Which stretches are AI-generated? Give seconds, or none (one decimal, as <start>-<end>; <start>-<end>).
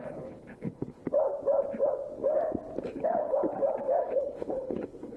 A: 0.0-1.0; 2.9-3.4; 4.0-5.2